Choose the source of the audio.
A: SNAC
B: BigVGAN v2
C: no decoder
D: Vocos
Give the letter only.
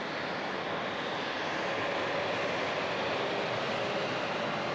C